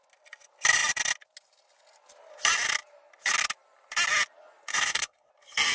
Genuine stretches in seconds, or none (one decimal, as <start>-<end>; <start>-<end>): 0.0-4.7; 5.3-5.7